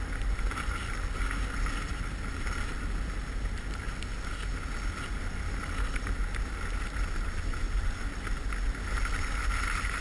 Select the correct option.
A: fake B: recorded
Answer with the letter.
B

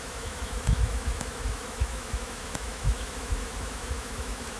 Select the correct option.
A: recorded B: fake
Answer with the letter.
B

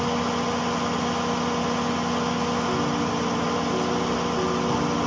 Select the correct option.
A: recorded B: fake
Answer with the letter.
A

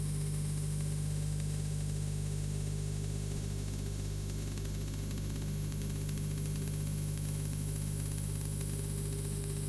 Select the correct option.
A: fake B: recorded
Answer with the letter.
A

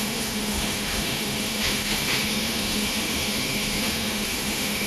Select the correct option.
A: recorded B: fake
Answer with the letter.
B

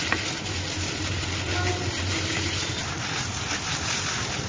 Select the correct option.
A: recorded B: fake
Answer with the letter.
A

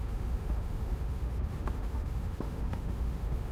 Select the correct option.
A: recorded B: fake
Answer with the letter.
B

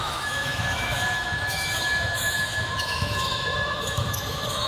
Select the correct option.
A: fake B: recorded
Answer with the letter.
A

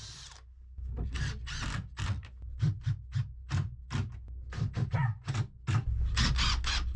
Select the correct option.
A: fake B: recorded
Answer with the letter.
B